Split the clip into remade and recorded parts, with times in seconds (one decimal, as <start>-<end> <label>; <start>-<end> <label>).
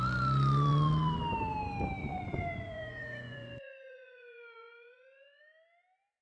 0.0-2.0 recorded; 2.0-5.4 remade; 5.4-6.2 recorded